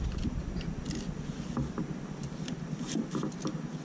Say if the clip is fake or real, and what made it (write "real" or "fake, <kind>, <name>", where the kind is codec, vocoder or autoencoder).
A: real